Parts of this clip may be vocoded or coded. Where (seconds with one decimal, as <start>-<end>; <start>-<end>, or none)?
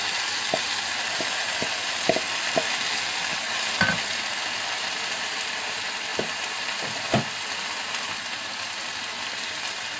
none